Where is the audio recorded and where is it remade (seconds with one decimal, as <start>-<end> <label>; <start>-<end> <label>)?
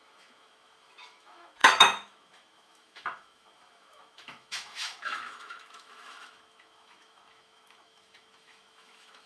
0.0-9.3 remade